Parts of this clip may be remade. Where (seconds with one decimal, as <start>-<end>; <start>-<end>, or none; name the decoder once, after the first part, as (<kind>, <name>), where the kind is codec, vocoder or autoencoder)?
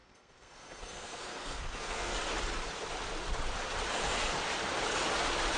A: 0.0-2.1 (codec, SNAC)